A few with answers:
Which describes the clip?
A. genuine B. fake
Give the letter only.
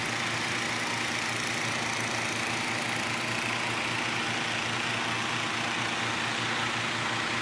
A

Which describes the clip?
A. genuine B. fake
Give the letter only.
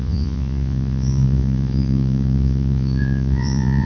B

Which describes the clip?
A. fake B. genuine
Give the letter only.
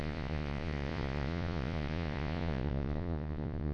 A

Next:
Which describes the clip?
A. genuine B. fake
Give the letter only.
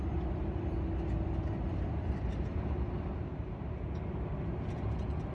A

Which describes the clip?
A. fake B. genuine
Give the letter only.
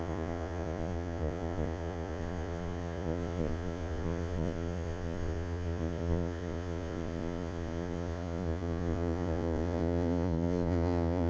A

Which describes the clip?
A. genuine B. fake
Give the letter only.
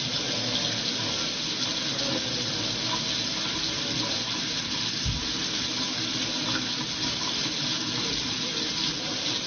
A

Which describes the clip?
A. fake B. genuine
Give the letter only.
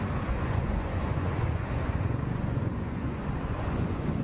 A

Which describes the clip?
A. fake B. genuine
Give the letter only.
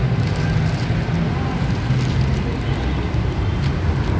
B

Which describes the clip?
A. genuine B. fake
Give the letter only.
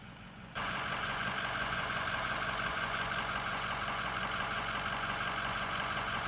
B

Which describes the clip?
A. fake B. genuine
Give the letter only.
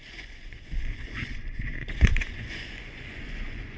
A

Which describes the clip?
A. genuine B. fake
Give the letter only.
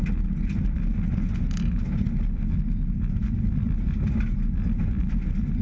A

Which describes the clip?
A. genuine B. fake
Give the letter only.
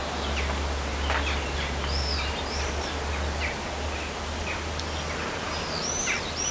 A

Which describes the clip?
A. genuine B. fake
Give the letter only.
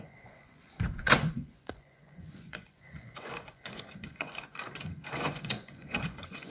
B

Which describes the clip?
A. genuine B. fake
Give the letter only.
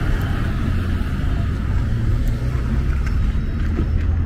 A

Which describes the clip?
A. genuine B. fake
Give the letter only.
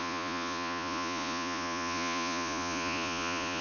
B